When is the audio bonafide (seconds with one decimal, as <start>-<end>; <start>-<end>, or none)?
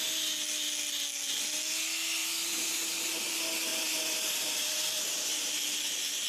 0.0-2.2; 3.3-3.7; 5.5-6.3